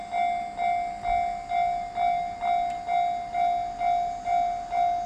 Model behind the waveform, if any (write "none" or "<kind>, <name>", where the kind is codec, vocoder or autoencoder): none